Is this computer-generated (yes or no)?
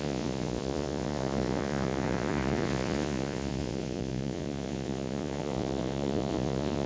yes